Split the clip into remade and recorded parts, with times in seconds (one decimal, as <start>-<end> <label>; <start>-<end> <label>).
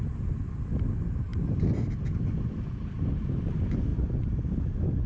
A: 0.0-5.1 recorded